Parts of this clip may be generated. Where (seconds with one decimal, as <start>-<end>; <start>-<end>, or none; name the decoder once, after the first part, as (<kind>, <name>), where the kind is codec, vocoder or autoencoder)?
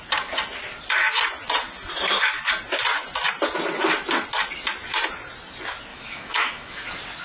5.9-6.8 (autoencoder, DAC-VAE)